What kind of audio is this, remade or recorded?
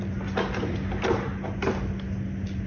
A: recorded